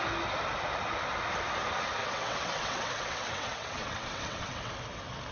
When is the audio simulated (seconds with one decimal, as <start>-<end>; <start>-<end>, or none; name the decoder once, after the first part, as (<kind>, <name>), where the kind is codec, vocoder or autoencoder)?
2.0-4.7 (vocoder, WaveNeXt)